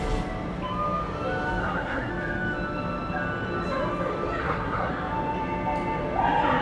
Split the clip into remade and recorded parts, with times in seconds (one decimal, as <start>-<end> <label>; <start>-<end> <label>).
0.0-1.6 recorded; 1.6-2.1 remade; 2.1-4.4 recorded; 4.4-4.9 remade; 4.9-6.6 recorded